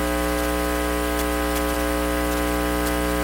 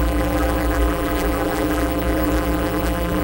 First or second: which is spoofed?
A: second